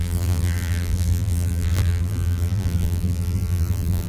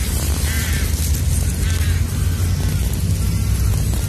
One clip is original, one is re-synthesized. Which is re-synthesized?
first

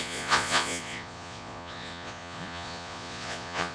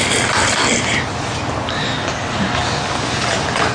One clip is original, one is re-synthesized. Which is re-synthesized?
first